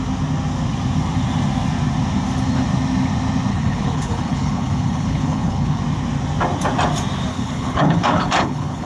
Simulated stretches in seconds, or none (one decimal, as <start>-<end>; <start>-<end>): 3.5-5.8; 7.3-8.9